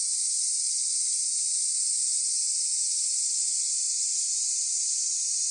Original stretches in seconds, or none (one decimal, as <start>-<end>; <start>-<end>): 2.6-3.1; 4.3-5.5